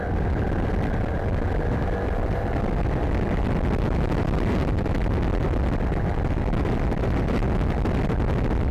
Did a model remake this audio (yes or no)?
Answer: no